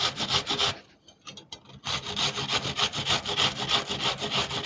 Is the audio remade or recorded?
recorded